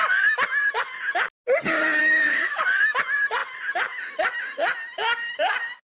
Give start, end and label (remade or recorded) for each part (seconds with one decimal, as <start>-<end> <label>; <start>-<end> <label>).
0.0-2.0 recorded; 2.0-2.6 remade; 2.6-6.0 recorded